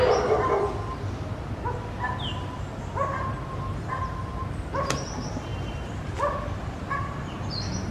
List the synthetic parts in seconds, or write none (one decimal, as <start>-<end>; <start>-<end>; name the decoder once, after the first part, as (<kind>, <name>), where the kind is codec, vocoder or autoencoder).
none